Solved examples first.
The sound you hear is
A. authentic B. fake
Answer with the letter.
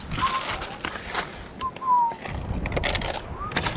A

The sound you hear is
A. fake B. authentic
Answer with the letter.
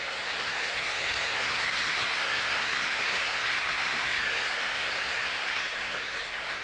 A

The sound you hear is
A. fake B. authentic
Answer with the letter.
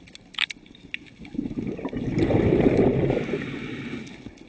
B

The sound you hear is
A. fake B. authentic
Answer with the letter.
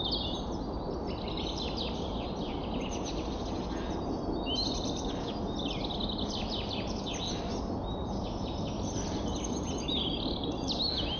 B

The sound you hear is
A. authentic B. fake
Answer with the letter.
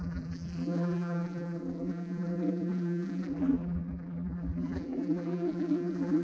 B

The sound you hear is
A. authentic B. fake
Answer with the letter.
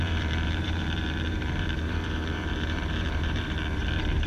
B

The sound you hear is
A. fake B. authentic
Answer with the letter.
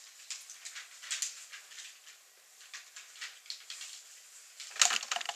B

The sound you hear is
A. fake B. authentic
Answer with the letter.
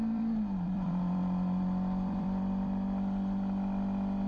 A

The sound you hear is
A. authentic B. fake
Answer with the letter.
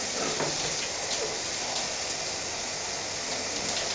A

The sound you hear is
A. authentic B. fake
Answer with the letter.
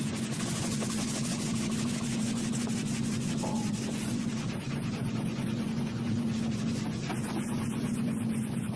B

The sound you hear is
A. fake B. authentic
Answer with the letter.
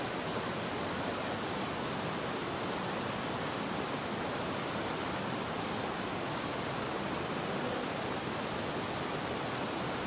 B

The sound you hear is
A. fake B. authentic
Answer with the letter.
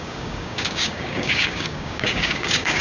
A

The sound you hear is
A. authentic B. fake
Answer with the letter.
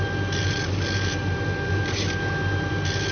A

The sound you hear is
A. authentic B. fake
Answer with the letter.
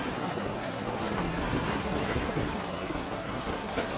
B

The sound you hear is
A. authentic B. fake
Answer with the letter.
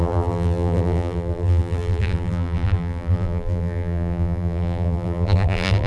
B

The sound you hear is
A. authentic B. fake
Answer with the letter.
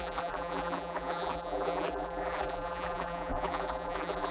B